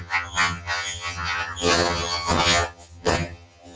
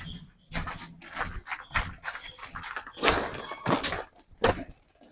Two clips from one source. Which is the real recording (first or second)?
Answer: second